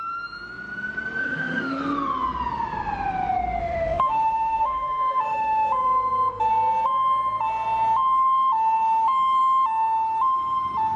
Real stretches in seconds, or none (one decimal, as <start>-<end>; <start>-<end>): 0.0-1.2; 1.8-3.6; 5.7-11.0